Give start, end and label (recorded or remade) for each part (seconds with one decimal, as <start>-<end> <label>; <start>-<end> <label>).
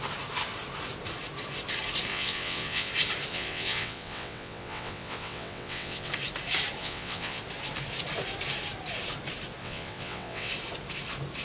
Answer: 0.0-2.1 recorded; 2.1-2.9 remade; 2.9-3.3 recorded; 3.3-6.1 remade; 6.1-6.8 recorded; 6.8-7.4 remade; 7.4-9.6 recorded; 9.6-10.5 remade; 10.5-11.4 recorded